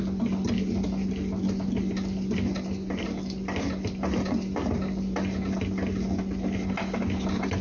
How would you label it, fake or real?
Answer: real